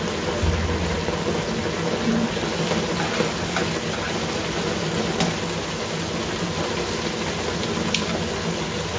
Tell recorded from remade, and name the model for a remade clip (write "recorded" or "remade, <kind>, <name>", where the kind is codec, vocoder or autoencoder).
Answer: recorded